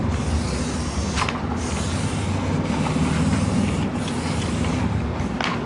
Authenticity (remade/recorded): recorded